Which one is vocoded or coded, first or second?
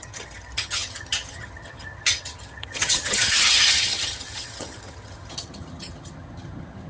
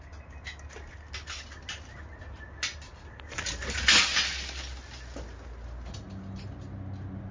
first